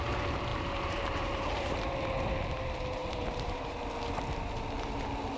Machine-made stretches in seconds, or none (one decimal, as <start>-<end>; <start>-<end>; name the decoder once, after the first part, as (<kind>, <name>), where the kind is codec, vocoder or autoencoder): 0.5-1.8 (vocoder, BigVGAN v2); 3.0-3.9